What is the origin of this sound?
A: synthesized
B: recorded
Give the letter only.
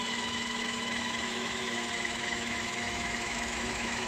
A